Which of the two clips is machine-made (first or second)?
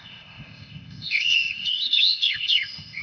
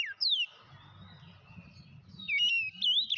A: first